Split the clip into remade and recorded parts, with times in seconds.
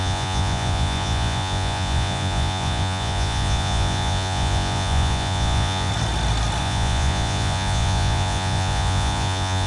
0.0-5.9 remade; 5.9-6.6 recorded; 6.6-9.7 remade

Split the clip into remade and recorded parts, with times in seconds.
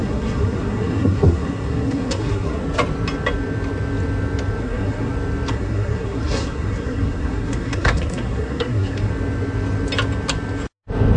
0.0-2.6 remade; 2.6-4.6 recorded; 4.6-5.1 remade; 5.1-5.5 recorded; 5.5-9.1 remade; 9.1-11.2 recorded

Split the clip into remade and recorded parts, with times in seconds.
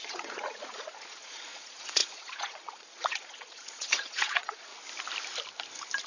0.0-4.7 remade; 4.7-6.1 recorded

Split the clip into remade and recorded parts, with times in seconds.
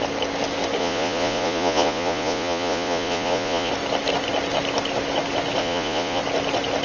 0.0-0.8 recorded; 0.8-3.7 remade; 3.7-5.6 recorded; 5.6-6.2 remade; 6.2-6.8 recorded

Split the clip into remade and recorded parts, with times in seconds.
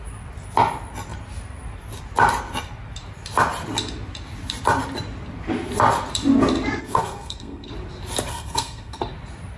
0.0-6.8 recorded; 6.8-7.7 remade; 7.7-8.3 recorded; 8.3-9.0 remade; 9.0-9.6 recorded